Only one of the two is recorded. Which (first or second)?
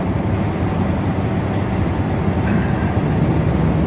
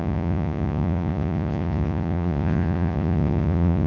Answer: first